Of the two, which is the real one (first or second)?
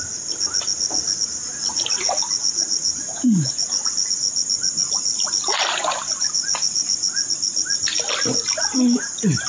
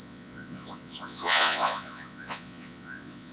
first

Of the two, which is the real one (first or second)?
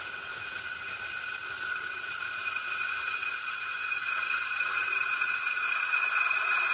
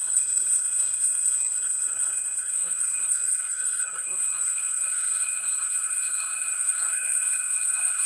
first